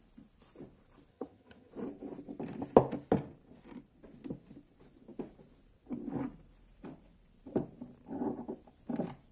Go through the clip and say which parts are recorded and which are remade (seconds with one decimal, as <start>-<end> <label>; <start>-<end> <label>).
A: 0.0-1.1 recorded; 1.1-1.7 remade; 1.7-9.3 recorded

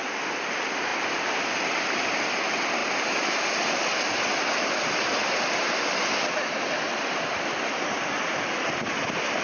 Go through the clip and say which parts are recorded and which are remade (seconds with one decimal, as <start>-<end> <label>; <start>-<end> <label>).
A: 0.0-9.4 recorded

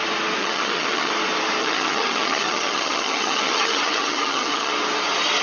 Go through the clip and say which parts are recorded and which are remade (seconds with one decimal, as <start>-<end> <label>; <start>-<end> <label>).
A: 0.0-0.4 recorded; 0.4-1.1 remade; 1.1-1.6 recorded; 1.6-4.7 remade; 4.7-5.4 recorded

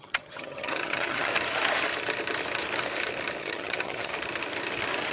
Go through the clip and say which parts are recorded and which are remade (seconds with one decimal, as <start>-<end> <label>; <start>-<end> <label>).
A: 0.0-1.3 remade; 1.3-3.4 recorded; 3.4-4.1 remade; 4.1-5.1 recorded

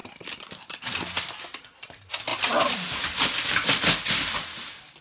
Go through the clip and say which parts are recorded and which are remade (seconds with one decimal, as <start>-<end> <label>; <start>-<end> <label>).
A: 0.0-5.0 recorded

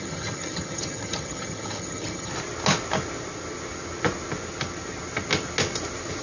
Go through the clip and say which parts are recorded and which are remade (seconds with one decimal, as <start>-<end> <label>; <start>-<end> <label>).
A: 0.0-2.3 remade; 2.3-6.2 recorded

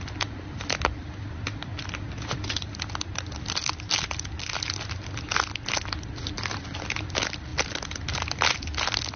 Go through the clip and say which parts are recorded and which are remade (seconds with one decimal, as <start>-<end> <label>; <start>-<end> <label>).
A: 0.0-9.2 recorded

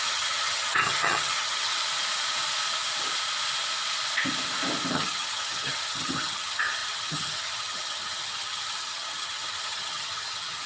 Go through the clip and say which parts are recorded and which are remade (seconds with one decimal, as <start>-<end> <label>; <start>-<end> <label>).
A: 0.0-1.7 remade; 1.7-4.9 recorded; 4.9-10.7 remade